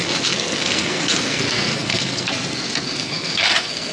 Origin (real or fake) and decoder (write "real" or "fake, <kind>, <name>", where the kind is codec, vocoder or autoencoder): fake, codec, SNAC